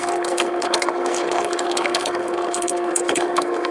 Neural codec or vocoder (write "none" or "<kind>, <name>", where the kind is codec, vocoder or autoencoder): codec, SNAC